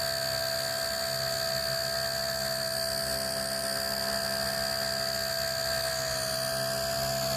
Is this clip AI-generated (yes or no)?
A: no